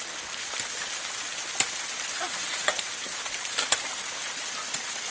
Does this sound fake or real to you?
real